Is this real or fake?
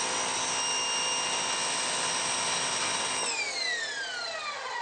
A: real